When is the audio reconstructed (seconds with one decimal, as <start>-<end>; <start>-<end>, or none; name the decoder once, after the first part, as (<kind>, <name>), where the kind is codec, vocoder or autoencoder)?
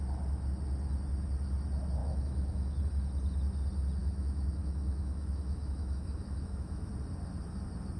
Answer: 2.0-2.8 (autoencoder, DAC-VAE); 4.0-6.9